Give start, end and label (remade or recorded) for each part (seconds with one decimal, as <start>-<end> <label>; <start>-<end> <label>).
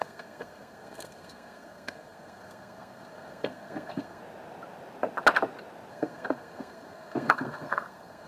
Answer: 0.0-4.2 remade; 4.2-5.9 recorded; 5.9-8.3 remade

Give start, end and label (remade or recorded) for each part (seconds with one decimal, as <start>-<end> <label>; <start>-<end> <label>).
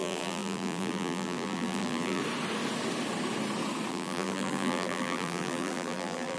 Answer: 0.0-2.2 remade; 2.2-3.9 recorded; 3.9-6.4 remade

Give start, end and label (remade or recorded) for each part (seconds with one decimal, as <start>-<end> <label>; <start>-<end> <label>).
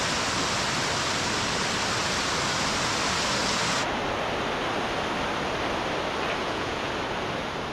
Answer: 0.0-6.4 recorded; 6.4-6.9 remade; 6.9-7.7 recorded